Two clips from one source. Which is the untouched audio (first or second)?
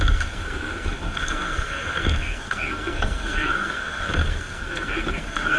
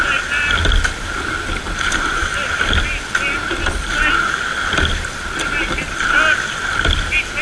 second